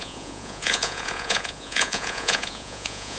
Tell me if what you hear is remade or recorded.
remade